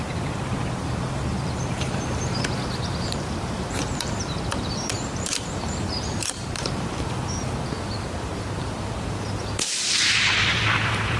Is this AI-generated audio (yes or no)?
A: yes